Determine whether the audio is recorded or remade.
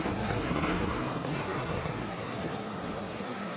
remade